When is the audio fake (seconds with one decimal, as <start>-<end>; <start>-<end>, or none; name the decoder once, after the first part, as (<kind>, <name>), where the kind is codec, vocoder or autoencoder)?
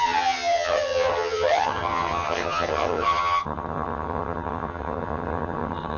0.0-6.0 (vocoder, HiFi-GAN)